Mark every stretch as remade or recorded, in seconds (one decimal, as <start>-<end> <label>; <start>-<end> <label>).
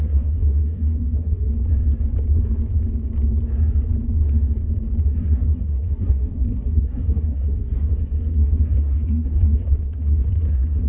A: 0.0-1.5 remade; 1.5-5.0 recorded; 5.0-10.9 remade